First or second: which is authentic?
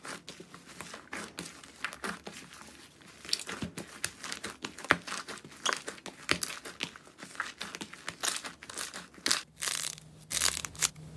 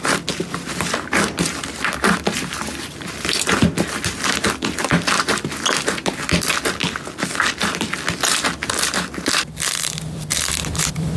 first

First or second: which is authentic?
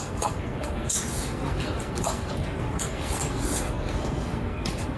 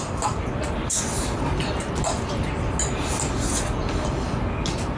second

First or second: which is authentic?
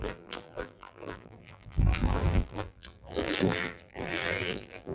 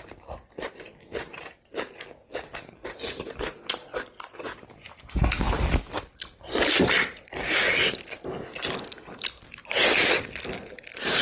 second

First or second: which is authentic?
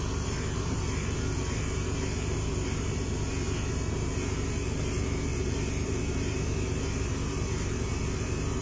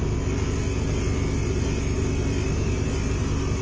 second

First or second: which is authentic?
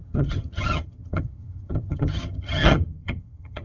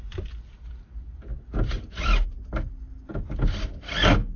second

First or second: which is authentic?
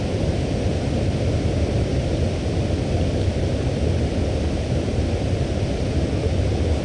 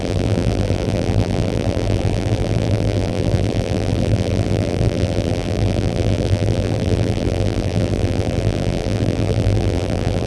first